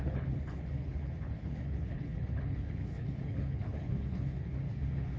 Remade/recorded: remade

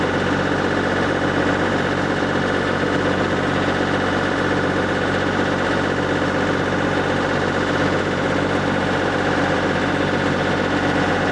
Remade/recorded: recorded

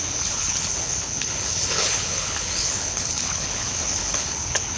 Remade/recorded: remade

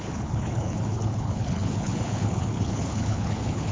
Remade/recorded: remade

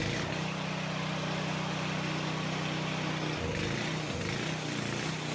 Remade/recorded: recorded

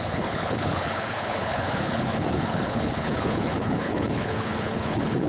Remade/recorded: remade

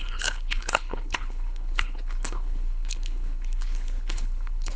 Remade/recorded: remade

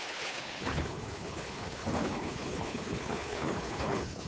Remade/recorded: remade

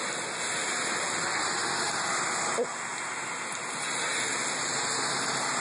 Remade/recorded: recorded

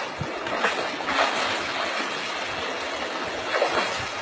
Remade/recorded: recorded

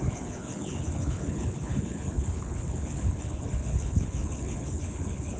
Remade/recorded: remade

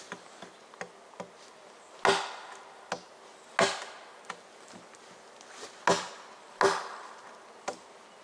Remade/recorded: recorded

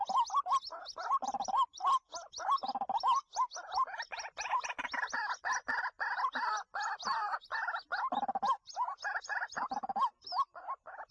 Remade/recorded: recorded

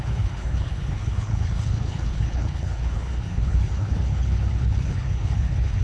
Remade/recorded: remade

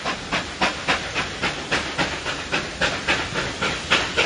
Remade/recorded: recorded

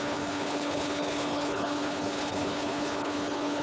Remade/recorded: remade